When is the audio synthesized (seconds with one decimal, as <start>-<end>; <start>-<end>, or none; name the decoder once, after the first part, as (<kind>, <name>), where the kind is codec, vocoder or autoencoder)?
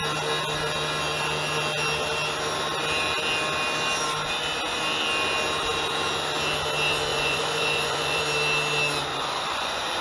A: 7.1-8.2 (vocoder, Vocos); 9.1-10.0